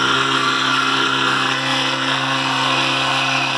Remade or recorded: remade